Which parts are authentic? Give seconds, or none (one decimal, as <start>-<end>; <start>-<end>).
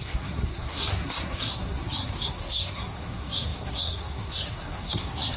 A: none